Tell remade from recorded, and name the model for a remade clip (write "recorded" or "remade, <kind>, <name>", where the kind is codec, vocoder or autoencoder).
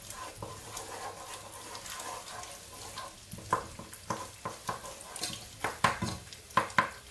recorded